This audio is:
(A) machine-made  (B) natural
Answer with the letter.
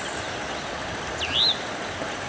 B